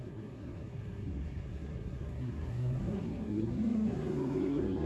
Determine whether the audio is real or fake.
fake